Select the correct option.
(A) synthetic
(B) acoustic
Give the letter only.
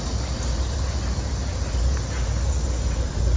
A